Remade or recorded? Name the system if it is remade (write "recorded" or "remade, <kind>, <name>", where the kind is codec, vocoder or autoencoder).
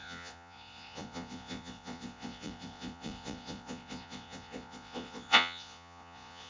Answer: remade, vocoder, Vocos